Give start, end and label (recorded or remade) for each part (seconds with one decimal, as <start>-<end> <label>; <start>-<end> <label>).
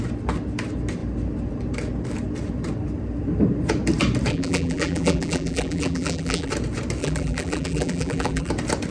0.0-4.3 recorded; 4.3-6.5 remade; 6.5-7.0 recorded; 7.0-8.5 remade; 8.5-8.9 recorded